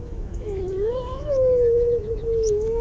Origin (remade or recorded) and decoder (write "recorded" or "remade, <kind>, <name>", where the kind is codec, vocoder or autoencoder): remade, autoencoder, DAC-VAE